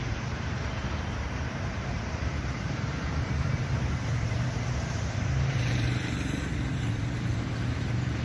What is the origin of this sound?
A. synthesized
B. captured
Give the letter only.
A